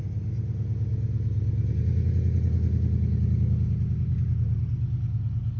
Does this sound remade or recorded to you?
recorded